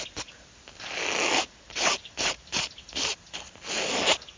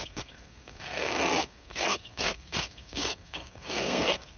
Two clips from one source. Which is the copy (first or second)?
second